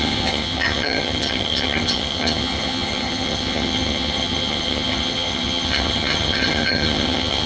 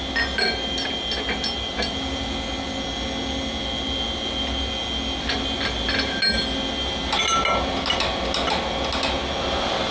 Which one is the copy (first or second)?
first